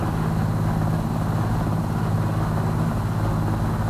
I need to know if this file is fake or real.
real